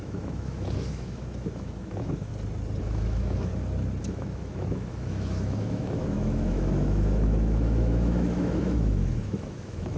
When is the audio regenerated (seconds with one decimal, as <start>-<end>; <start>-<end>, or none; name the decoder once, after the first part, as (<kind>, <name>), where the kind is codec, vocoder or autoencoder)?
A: 0.0-2.3 (autoencoder, DAC-VAE); 2.8-3.5; 4.0-10.0